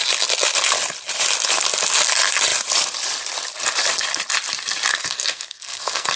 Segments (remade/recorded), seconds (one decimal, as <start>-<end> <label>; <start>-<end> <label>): 0.0-4.9 recorded; 4.9-6.2 remade